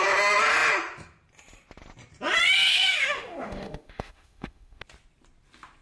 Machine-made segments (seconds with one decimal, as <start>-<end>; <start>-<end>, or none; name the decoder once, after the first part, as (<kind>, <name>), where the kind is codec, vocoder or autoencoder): 2.7-4.8 (autoencoder, DAC-VAE)